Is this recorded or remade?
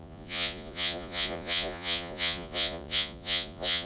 remade